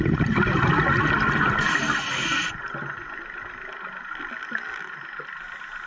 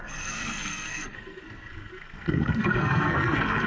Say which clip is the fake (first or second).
second